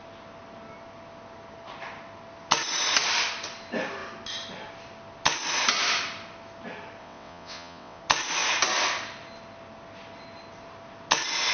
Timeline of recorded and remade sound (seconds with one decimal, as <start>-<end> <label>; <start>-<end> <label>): 0.0-7.0 recorded; 7.0-8.0 remade; 8.0-11.5 recorded